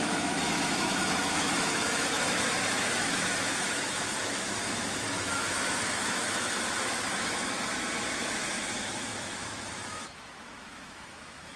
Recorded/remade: remade